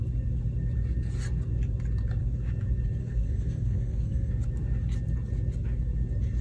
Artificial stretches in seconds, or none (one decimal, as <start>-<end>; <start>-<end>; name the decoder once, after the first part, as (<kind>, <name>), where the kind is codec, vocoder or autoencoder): 3.0-4.3 (codec, SNAC)